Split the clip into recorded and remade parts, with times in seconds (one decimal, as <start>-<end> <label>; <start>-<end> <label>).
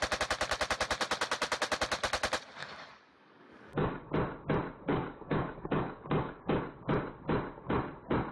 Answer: 0.0-2.6 recorded; 2.6-4.1 remade; 4.1-4.9 recorded; 4.9-6.6 remade; 6.6-8.3 recorded